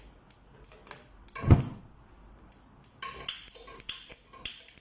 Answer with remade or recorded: recorded